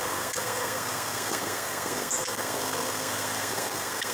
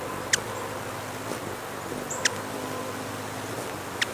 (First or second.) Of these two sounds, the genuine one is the second